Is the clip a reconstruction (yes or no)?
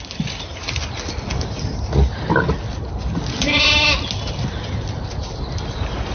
no